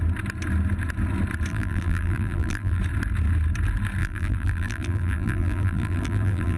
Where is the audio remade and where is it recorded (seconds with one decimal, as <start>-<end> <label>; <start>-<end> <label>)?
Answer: 0.0-1.5 recorded; 1.5-2.8 remade; 2.8-4.0 recorded; 4.0-6.6 remade